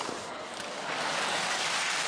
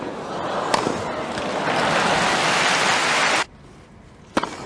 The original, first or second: second